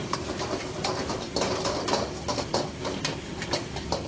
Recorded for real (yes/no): yes